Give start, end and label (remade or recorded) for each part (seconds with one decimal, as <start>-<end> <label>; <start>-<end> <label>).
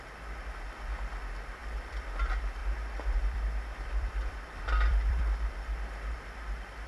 0.0-1.6 recorded; 1.6-2.2 remade; 2.2-2.6 recorded; 2.6-5.5 remade; 5.5-6.9 recorded